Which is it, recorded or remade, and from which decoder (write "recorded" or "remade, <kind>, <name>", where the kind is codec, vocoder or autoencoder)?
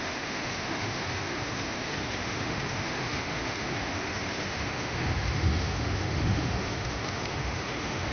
remade, autoencoder, DAC-VAE